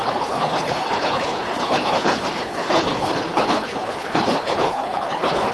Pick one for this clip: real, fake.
fake